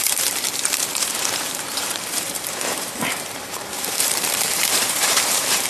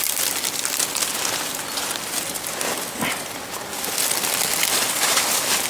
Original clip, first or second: second